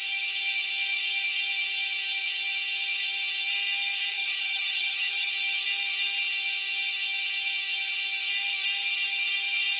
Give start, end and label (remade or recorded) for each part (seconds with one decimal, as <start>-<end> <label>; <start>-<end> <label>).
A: 0.0-4.1 recorded; 4.1-5.3 remade; 5.3-9.8 recorded